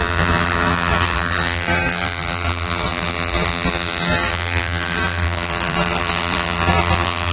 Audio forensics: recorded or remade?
remade